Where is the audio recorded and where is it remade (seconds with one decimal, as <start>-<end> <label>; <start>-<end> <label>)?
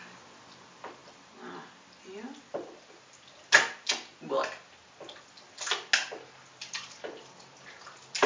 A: 0.0-8.3 recorded